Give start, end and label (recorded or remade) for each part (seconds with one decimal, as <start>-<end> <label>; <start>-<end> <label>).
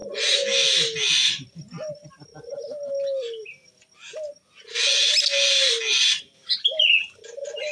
0.0-7.7 recorded